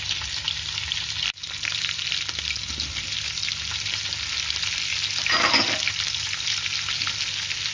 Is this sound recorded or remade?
recorded